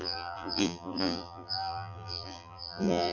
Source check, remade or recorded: remade